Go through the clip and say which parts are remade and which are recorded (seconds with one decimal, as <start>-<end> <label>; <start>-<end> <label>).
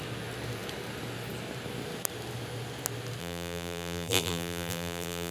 0.0-3.2 recorded; 3.2-5.3 remade